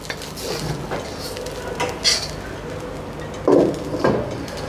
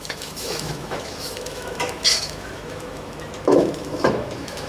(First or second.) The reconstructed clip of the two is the second